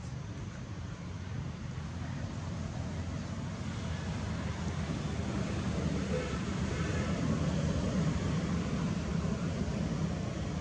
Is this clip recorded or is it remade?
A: remade